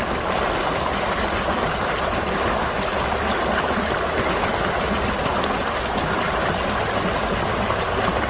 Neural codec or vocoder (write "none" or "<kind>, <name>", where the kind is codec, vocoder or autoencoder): none